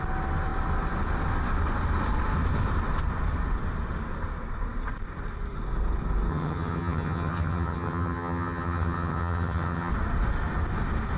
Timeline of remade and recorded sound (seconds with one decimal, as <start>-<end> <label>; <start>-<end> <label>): 0.0-6.3 recorded; 6.3-9.9 remade; 9.9-11.2 recorded

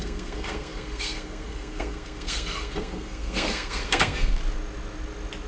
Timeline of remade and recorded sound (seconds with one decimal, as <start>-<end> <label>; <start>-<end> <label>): 0.0-4.4 remade; 4.4-5.5 recorded